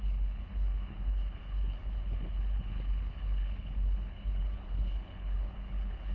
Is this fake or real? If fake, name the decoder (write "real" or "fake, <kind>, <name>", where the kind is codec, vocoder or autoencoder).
fake, codec, HILCodec